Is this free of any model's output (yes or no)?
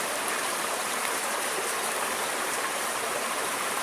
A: no